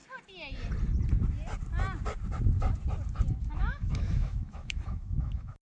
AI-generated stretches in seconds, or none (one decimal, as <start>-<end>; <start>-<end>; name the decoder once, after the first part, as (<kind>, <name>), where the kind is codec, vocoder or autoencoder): 3.4-5.6 (autoencoder, DAC-VAE)